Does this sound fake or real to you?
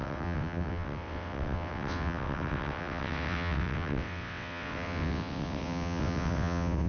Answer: fake